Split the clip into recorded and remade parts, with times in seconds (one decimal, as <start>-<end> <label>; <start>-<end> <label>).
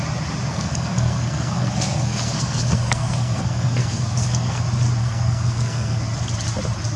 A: 0.0-0.5 recorded; 0.5-4.6 remade; 4.6-5.0 recorded; 5.0-6.0 remade; 6.0-7.0 recorded